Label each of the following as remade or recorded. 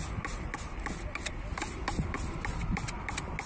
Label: recorded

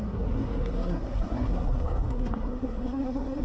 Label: remade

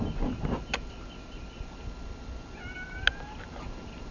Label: recorded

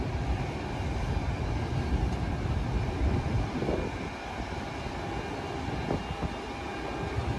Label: recorded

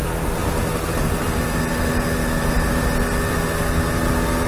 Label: recorded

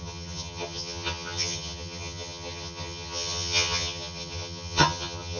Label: remade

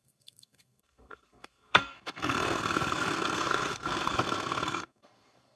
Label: remade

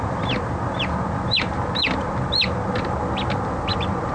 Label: recorded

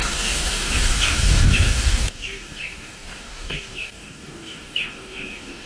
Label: remade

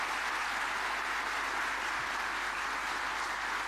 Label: recorded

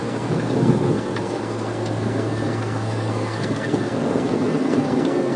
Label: remade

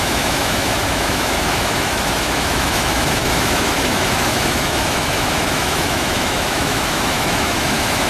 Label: remade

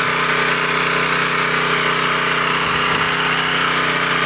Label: recorded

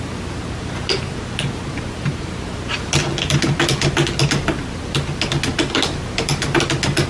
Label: recorded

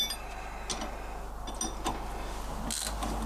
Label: recorded